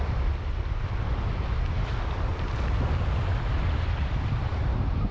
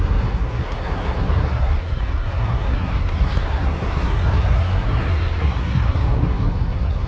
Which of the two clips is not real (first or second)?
second